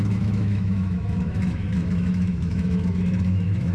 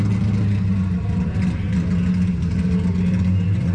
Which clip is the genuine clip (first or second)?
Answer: second